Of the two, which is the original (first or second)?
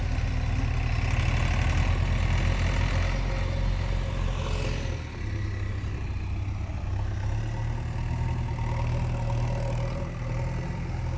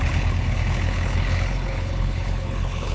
first